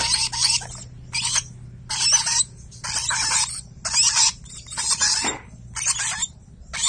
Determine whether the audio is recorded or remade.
recorded